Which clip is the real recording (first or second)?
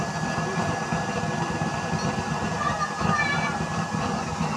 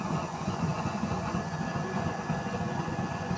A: first